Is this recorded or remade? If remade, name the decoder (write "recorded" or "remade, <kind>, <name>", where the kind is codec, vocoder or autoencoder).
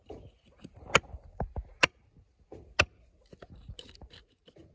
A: recorded